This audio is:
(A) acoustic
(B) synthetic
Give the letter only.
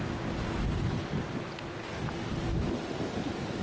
A